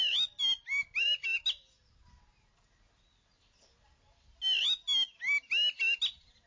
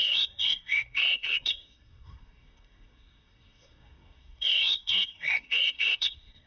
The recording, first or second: first